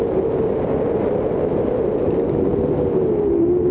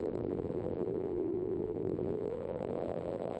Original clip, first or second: first